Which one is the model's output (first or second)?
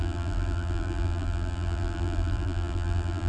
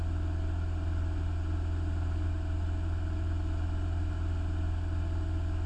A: first